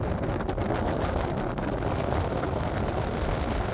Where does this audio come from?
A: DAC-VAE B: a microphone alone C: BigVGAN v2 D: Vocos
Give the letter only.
B